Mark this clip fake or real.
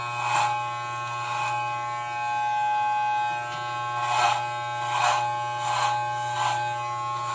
real